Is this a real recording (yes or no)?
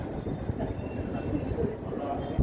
yes